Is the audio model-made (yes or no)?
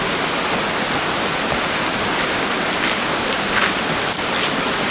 no